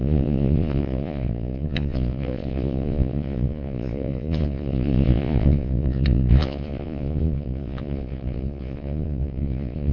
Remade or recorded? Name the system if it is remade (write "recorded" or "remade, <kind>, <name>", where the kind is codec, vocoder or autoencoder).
remade, vocoder, Vocos